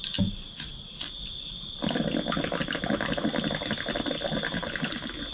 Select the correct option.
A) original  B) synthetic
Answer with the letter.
A